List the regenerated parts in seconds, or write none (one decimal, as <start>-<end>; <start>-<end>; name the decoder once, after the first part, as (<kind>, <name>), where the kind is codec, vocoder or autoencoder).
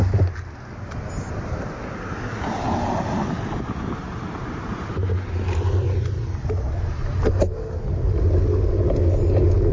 4.0-4.9 (vocoder, BigVGAN v2)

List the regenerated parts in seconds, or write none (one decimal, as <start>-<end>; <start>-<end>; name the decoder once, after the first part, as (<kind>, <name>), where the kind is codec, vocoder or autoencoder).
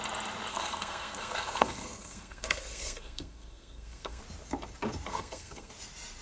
0.5-4.2 (codec, SNAC); 5.1-5.7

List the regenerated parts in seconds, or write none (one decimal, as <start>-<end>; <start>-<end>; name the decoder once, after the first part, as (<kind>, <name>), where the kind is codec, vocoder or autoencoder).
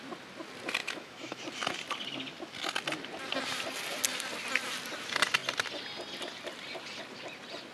0.8-1.4 (autoencoder, DAC-VAE)